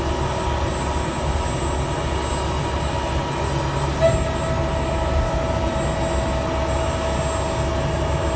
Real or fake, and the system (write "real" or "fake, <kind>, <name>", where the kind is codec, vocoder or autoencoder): real